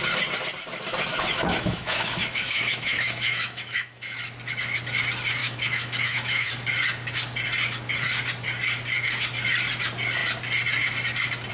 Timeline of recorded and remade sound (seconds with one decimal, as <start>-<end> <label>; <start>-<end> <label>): 0.0-1.1 recorded; 1.1-4.2 remade; 4.2-5.4 recorded; 5.4-6.5 remade; 6.5-11.5 recorded